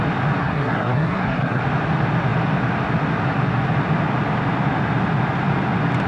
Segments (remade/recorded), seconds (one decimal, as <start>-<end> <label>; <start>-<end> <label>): 0.0-0.4 recorded; 0.4-1.6 remade; 1.6-6.1 recorded